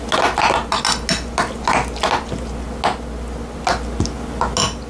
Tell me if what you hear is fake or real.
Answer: real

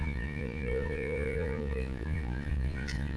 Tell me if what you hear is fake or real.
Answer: fake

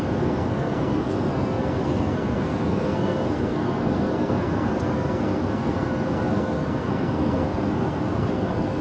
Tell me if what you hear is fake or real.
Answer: fake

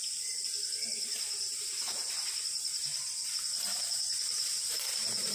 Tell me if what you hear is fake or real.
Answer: fake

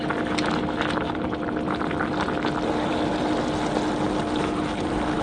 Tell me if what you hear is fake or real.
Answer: real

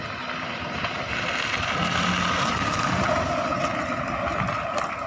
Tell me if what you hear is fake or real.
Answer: real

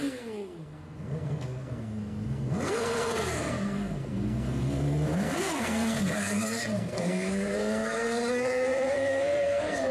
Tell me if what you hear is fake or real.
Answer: fake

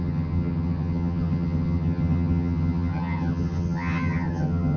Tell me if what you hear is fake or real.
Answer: fake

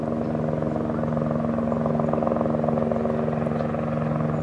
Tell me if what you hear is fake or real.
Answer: real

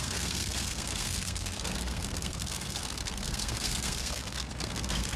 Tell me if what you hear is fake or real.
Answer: fake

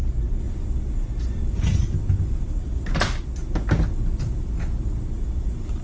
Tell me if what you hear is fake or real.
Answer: real